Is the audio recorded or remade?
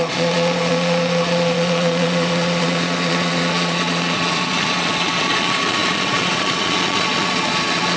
remade